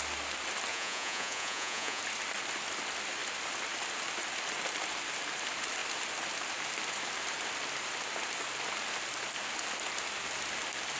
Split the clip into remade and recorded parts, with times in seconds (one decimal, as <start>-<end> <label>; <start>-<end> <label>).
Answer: 0.0-0.7 recorded; 0.7-2.0 remade; 2.0-11.0 recorded

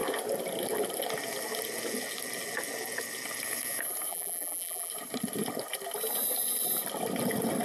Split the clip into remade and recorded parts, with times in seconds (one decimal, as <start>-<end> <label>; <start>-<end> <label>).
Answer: 0.0-4.1 recorded; 4.1-4.9 remade; 4.9-7.6 recorded

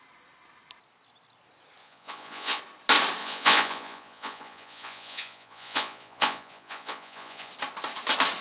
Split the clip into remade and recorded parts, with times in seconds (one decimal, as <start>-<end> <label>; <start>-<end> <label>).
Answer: 0.0-1.8 recorded; 1.8-2.6 remade; 2.6-3.2 recorded; 3.2-7.5 remade; 7.5-8.4 recorded

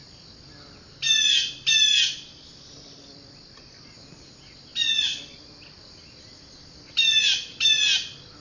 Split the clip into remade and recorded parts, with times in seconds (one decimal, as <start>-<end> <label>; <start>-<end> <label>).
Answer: 0.0-8.4 recorded

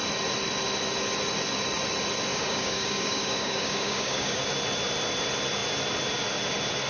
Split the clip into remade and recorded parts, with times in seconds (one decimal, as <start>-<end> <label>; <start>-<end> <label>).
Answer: 0.0-2.3 recorded; 2.3-4.4 remade; 4.4-6.9 recorded

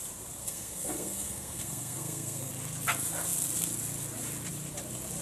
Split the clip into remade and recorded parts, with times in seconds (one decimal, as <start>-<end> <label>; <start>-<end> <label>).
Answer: 0.0-0.4 recorded; 0.4-2.5 remade; 2.5-5.2 recorded